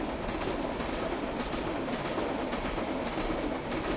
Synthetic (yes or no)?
no